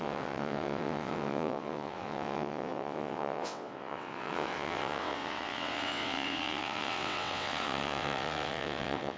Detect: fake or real fake